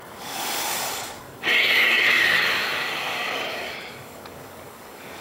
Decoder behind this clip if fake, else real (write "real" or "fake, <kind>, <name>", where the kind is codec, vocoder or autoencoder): fake, codec, DAC